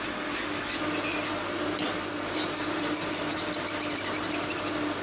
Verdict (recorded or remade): recorded